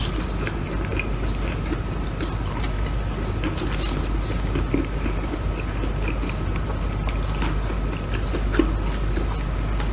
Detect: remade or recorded recorded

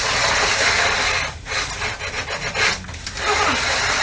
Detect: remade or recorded recorded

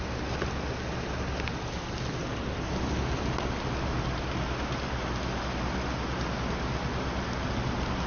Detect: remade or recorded recorded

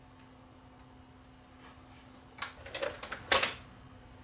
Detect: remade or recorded recorded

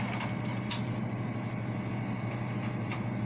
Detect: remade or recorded recorded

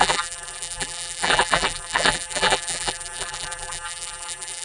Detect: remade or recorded remade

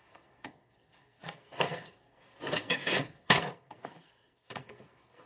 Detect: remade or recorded remade